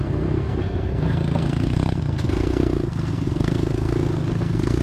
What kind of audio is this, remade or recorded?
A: remade